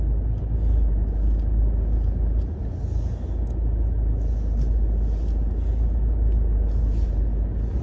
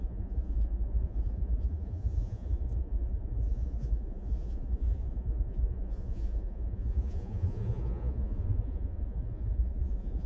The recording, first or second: first